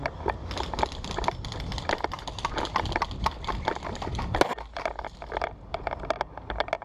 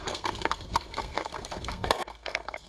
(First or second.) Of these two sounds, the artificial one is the second